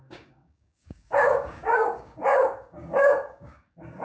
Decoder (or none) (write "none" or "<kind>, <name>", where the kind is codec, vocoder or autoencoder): codec, DAC